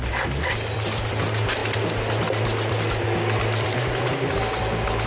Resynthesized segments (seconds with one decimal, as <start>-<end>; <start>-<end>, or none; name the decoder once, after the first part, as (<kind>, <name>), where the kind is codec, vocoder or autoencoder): none